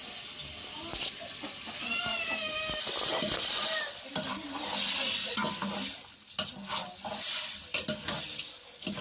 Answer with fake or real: real